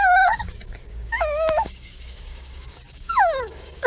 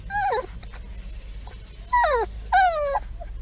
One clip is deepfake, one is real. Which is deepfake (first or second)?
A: first